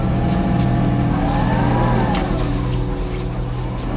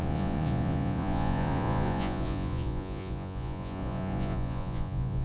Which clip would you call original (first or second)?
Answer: first